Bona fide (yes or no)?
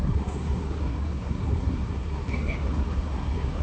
no